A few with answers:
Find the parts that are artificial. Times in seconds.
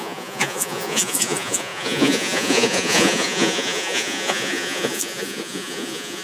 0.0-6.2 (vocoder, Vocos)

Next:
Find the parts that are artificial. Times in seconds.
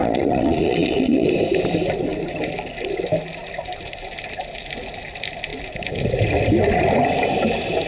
0.0-1.3 (vocoder, Vocos)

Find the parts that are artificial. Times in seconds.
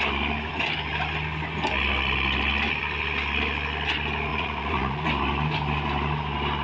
4.3-5.1 (vocoder, Vocos)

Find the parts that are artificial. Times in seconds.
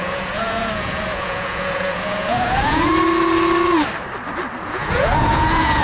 0.0-2.9 (vocoder, Vocos); 4.6-5.8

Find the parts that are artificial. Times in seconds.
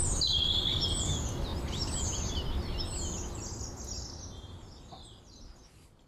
none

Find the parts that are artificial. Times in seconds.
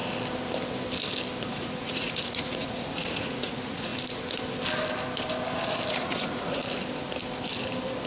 1.4-3.9 (vocoder, Vocos); 5.9-6.6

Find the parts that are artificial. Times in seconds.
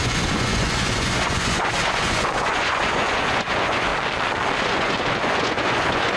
0.0-3.9 (vocoder, Vocos); 4.6-6.2